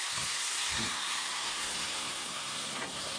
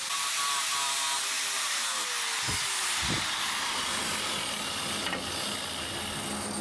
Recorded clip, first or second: second